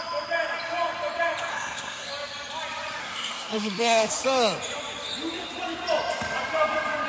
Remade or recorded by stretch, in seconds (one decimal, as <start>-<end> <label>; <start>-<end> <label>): 0.0-1.5 recorded; 1.5-2.1 remade; 2.1-3.0 recorded; 3.0-4.1 remade; 4.1-7.1 recorded